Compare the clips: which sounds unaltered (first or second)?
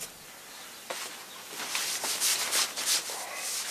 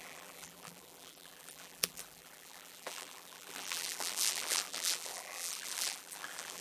first